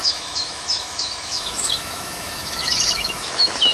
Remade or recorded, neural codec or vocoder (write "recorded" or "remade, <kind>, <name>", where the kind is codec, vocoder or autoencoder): remade, autoencoder, DAC-VAE